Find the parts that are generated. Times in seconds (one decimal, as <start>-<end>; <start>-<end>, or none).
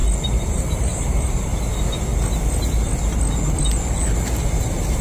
0.5-1.5; 4.5-5.0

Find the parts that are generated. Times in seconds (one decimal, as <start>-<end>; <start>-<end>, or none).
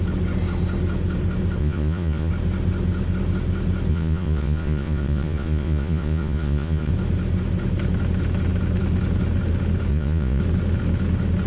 1.6-2.3; 3.9-6.9; 9.9-10.4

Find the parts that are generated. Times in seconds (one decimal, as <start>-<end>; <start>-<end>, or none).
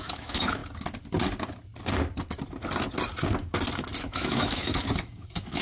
0.0-0.6; 4.0-5.6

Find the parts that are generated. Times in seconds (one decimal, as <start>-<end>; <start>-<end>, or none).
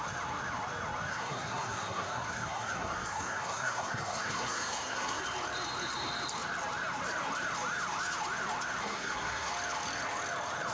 1.1-5.2; 8.8-9.5